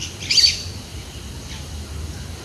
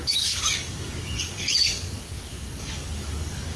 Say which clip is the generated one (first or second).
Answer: second